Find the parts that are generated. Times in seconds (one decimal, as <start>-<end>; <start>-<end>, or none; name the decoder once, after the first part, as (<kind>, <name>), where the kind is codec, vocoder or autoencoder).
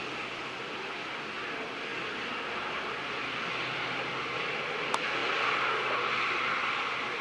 none